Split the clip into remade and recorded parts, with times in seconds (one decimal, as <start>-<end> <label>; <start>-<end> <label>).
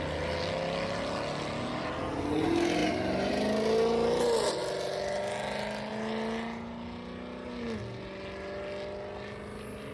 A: 0.0-9.9 recorded